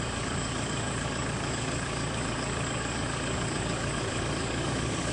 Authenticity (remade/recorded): remade